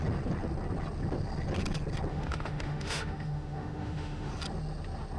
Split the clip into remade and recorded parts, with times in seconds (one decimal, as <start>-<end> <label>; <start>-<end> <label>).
0.0-2.1 recorded; 2.1-4.3 remade; 4.3-5.2 recorded